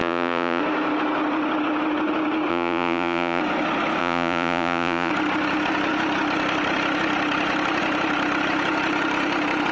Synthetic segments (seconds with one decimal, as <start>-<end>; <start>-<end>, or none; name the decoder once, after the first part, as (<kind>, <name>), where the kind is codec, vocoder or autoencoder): 0.0-0.6 (vocoder, Vocos); 2.5-3.4; 4.0-5.1